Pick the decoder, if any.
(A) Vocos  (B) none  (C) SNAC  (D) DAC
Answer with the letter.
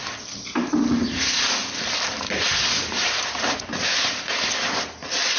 B